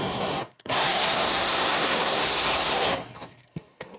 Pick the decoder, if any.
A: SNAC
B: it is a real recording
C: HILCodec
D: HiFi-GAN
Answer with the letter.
A